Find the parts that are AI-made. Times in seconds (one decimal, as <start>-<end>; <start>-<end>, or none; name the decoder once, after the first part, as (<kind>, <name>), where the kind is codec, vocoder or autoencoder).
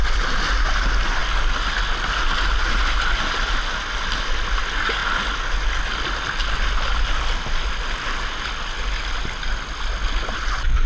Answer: none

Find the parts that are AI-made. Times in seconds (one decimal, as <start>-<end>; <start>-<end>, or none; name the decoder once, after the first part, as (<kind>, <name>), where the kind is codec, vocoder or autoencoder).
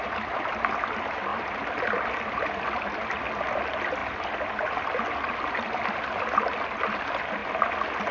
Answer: none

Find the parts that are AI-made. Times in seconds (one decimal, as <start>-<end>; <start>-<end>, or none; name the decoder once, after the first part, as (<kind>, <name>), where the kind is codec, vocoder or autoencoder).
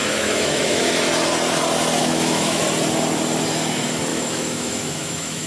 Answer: 0.0-0.9 (autoencoder, DAC-VAE); 2.0-2.6; 4.1-5.5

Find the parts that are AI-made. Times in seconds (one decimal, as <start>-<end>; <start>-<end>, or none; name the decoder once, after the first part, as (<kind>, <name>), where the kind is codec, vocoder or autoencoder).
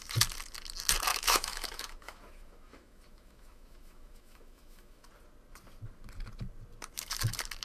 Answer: 1.1-5.1 (autoencoder, DAC-VAE)